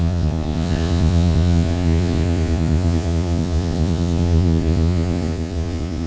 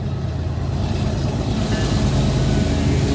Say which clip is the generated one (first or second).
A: first